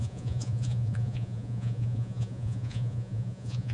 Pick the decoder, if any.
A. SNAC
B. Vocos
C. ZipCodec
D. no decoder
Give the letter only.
B